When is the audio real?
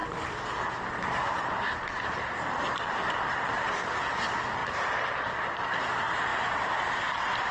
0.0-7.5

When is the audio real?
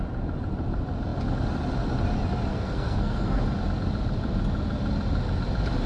0.0-2.5; 3.4-5.9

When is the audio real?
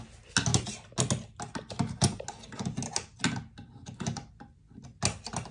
0.0-5.5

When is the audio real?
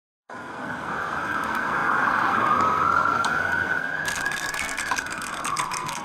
none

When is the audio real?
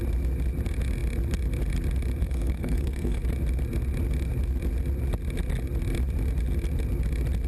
0.0-2.2; 3.2-7.5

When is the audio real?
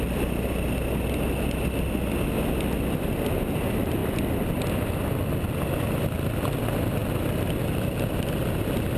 0.0-9.0